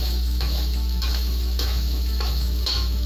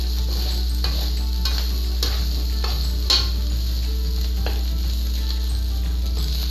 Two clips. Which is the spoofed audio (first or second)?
first